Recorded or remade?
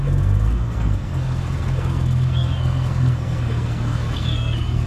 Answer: remade